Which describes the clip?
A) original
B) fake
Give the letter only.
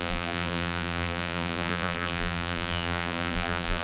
B